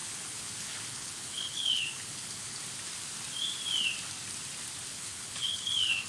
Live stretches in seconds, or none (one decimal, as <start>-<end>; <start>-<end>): 0.5-0.9; 2.6-4.9